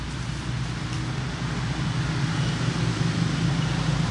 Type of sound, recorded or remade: recorded